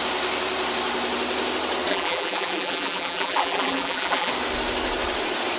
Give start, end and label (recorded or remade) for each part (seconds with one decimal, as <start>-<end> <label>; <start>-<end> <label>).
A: 0.0-1.9 recorded; 1.9-4.3 remade; 4.3-5.6 recorded

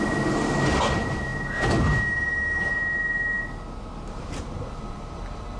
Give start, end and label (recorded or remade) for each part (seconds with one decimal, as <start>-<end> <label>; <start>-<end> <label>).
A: 0.0-5.6 recorded

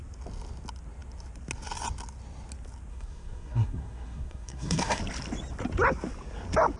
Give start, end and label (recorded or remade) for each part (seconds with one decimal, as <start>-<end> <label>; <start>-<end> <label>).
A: 0.0-2.9 recorded; 2.9-5.0 remade; 5.0-6.8 recorded

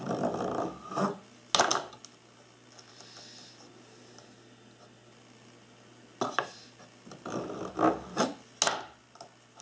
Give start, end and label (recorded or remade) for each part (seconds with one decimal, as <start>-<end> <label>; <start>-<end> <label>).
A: 0.0-9.6 recorded